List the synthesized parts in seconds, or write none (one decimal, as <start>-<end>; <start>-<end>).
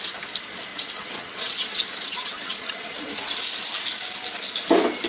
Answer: 0.7-3.4